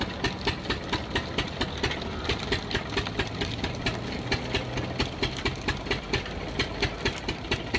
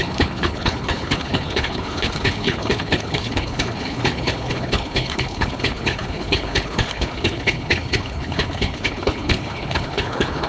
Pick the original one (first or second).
first